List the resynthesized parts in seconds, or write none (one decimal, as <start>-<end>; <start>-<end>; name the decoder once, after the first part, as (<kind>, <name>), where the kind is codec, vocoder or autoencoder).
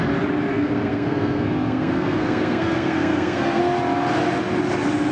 0.5-3.6 (codec, SNAC)